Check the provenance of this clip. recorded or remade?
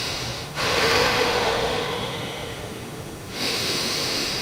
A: remade